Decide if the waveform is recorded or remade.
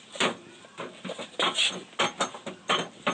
recorded